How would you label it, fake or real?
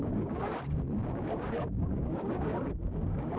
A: fake